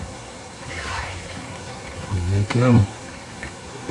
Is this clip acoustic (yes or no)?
no